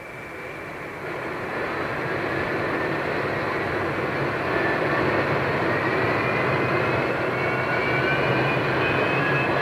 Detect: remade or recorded recorded